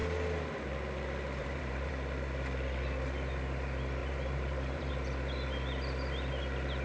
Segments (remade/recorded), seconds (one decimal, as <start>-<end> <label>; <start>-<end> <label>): 0.0-1.4 recorded; 1.4-1.9 remade; 1.9-4.0 recorded; 4.0-4.9 remade; 4.9-6.8 recorded